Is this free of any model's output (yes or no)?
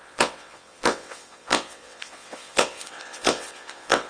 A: no